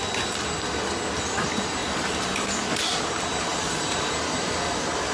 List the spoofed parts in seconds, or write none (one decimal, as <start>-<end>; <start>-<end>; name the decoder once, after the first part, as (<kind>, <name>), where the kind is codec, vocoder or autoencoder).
1.8-2.8 (vocoder, BigVGAN v2); 3.5-4.1